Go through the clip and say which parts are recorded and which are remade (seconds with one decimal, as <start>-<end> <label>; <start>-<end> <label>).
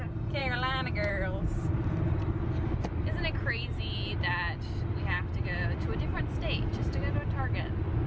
0.0-8.1 recorded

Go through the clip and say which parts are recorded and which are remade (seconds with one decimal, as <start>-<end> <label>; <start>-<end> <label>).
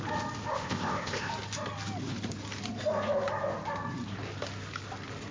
0.0-0.5 recorded; 0.5-1.3 remade; 1.3-5.3 recorded